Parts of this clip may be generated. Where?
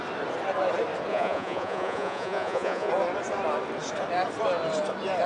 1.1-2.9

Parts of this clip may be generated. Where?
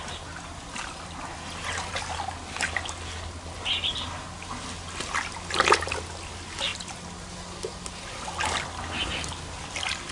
9.0-9.7